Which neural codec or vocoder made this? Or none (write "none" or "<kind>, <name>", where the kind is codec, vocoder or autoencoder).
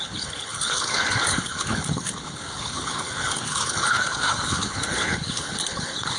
codec, HILCodec